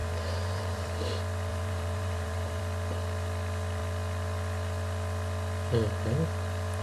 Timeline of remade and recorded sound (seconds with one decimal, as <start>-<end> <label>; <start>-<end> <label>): 0.0-1.1 remade; 1.1-1.5 recorded; 1.5-2.6 remade; 2.6-6.8 recorded